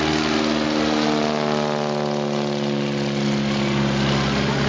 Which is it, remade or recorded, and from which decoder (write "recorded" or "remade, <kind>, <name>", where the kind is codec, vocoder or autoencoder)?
recorded